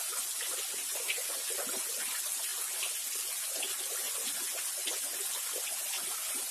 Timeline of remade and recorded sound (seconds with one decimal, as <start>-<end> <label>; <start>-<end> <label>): 0.0-6.5 recorded